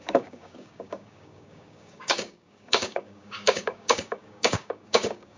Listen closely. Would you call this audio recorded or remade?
remade